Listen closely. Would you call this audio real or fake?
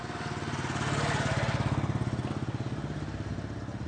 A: real